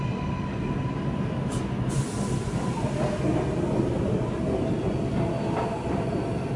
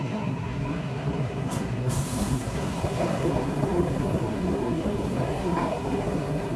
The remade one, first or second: second